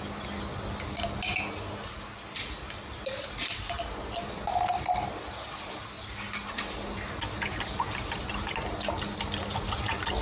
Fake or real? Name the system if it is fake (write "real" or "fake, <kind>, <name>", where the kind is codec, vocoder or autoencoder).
real